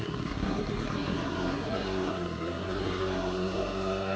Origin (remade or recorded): remade